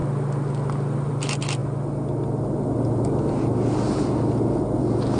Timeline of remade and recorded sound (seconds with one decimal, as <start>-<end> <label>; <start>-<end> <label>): 0.0-5.2 recorded